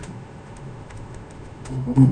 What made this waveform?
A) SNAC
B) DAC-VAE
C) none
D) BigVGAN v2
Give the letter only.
B